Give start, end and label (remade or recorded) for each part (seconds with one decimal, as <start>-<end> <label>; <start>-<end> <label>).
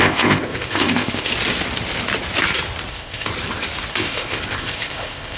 0.0-1.3 remade; 1.3-2.9 recorded; 2.9-3.3 remade; 3.3-3.9 recorded; 3.9-5.4 remade